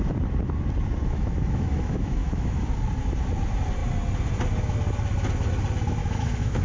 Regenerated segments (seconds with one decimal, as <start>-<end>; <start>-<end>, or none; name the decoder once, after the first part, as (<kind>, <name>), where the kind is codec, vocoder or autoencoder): 1.0-2.6 (autoencoder, DAC-VAE); 6.0-6.6